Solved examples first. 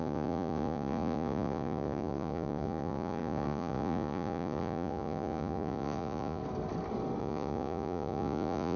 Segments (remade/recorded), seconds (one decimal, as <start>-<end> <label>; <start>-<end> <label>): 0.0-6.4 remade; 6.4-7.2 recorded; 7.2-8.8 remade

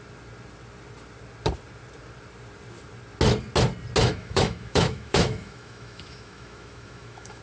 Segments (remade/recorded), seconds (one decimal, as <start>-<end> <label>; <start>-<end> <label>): 0.0-4.0 recorded; 4.0-7.4 remade

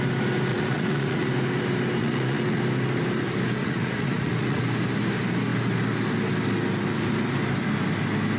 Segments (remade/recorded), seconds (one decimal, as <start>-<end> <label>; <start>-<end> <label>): 0.0-0.5 recorded; 0.5-1.3 remade; 1.3-2.0 recorded; 2.0-2.6 remade; 2.6-3.6 recorded; 3.6-4.6 remade; 4.6-8.4 recorded

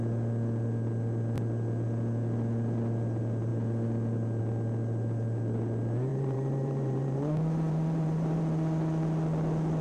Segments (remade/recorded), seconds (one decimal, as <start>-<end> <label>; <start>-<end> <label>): 0.0-6.1 recorded; 6.1-8.4 remade; 8.4-9.8 recorded

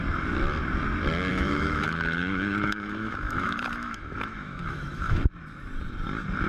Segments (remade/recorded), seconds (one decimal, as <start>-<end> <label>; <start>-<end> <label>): 0.0-1.3 recorded; 1.3-5.2 remade; 5.2-6.5 recorded